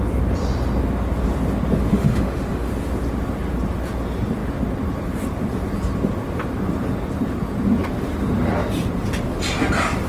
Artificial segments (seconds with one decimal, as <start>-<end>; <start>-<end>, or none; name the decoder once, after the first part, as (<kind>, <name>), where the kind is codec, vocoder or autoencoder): 1.9-2.7 (autoencoder, DAC-VAE)

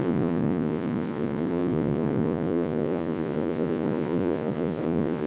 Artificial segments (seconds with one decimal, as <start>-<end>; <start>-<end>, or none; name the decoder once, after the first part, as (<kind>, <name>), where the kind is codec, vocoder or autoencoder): 0.0-5.3 (vocoder, Vocos)